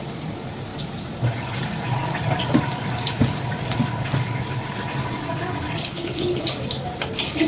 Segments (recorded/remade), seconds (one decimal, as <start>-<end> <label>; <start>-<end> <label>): 0.0-5.8 recorded; 5.8-6.4 remade; 6.4-7.5 recorded